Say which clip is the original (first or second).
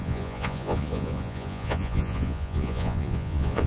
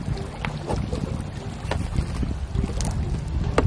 second